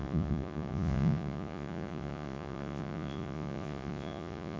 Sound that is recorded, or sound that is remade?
remade